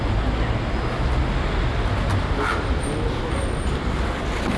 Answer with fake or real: real